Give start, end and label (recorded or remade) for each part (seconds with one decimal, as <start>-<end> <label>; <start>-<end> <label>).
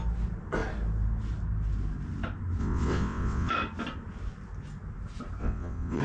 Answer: 0.0-2.6 recorded; 2.6-3.5 remade; 3.5-5.4 recorded; 5.4-6.0 remade